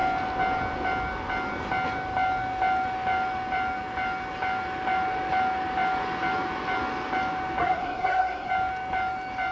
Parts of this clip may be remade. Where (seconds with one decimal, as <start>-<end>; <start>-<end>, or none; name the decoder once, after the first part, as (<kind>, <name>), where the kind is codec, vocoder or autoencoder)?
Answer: 7.6-8.5 (codec, SNAC)